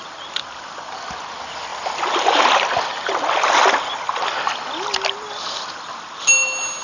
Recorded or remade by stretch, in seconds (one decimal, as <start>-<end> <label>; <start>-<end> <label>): 0.0-6.8 recorded